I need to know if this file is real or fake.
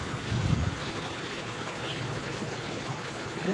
fake